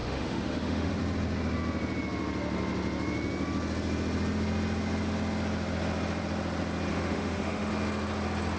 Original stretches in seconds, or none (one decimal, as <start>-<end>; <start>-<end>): 1.0-6.9; 7.7-8.6